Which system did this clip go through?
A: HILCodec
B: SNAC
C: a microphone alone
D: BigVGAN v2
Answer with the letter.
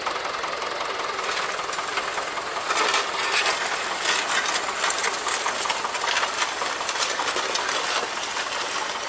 C